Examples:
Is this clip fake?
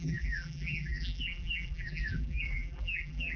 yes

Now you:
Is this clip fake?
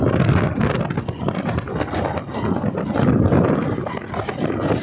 no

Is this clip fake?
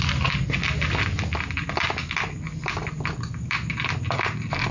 no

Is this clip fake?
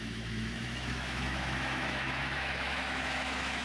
yes